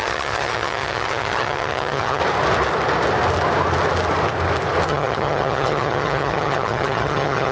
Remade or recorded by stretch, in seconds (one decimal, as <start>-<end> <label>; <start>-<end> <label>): 0.0-2.2 remade; 2.2-4.9 recorded; 4.9-7.5 remade